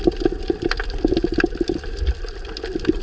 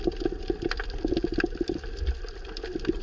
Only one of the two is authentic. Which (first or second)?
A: second